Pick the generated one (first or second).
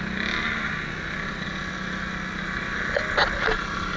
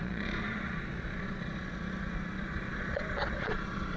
second